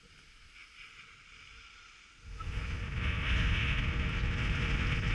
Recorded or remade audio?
recorded